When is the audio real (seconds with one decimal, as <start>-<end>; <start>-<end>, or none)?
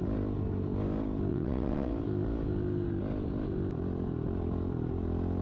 0.0-1.3; 1.9-5.4